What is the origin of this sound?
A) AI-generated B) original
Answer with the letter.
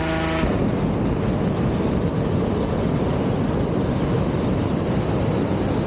B